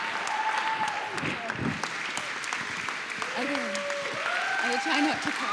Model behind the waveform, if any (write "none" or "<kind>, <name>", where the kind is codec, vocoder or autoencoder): none